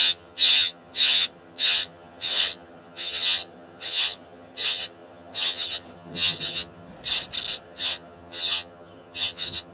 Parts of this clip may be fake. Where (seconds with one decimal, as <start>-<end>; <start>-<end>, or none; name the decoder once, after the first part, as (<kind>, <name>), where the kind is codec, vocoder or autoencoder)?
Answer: 0.0-6.9 (vocoder, HiFi-GAN); 7.6-9.7